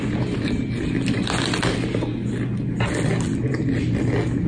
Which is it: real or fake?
real